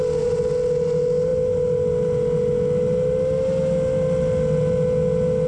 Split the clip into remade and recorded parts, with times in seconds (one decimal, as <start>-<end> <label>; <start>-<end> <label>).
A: 0.0-5.5 recorded